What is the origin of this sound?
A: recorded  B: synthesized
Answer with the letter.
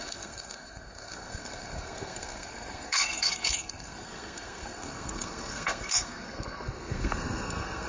B